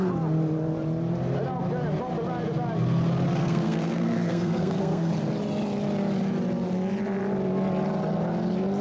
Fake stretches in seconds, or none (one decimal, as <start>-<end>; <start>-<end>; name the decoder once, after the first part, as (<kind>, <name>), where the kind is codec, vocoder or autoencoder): 3.4-5.1 (codec, SNAC)